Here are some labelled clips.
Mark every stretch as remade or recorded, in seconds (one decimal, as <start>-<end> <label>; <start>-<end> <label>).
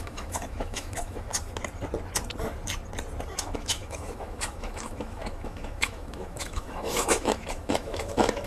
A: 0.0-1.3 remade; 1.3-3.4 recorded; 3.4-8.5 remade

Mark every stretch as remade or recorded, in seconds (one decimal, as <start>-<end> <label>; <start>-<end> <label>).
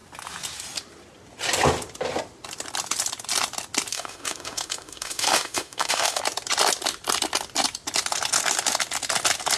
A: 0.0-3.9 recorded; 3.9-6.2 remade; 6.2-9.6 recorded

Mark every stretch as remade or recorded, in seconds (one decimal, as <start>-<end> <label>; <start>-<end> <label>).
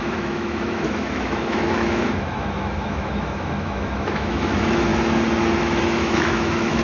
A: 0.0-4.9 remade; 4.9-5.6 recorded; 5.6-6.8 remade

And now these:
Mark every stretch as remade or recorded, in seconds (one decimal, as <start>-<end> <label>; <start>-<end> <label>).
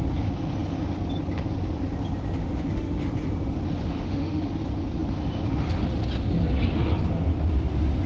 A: 0.0-2.4 recorded; 2.4-3.0 remade; 3.0-3.8 recorded; 3.8-4.4 remade; 4.4-8.1 recorded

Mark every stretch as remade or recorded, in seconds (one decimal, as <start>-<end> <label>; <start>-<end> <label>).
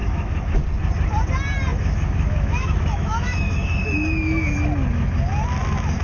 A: 0.0-0.5 remade; 0.5-1.7 recorded; 1.7-4.5 remade; 4.5-6.0 recorded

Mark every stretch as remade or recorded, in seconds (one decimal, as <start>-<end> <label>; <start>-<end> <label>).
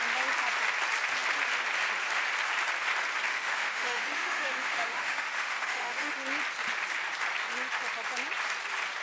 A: 0.0-3.3 recorded; 3.3-6.1 remade; 6.1-9.0 recorded